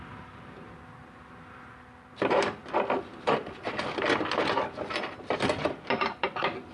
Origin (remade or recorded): remade